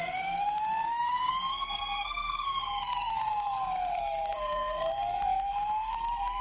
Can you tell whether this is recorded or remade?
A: remade